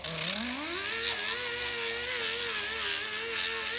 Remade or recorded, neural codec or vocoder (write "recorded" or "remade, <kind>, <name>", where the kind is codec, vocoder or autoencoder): recorded